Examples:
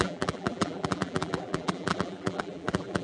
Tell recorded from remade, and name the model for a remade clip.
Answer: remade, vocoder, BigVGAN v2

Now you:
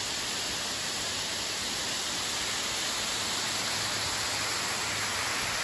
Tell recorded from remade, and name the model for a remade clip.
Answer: recorded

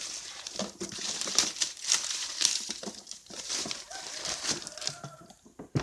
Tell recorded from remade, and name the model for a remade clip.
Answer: remade, vocoder, BigVGAN v2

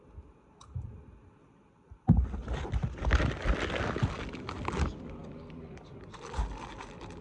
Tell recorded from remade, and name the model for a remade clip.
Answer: recorded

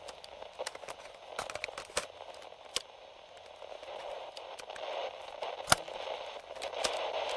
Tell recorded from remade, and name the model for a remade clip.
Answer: recorded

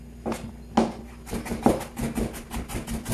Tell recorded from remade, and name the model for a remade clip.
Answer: recorded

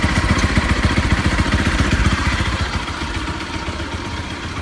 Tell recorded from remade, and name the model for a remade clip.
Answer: remade, vocoder, BigVGAN v2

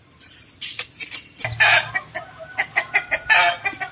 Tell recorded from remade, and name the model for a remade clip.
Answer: recorded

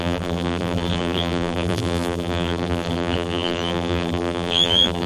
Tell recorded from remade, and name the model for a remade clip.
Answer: remade, vocoder, BigVGAN v2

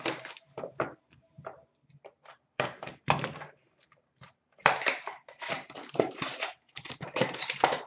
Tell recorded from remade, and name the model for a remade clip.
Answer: remade, vocoder, BigVGAN v2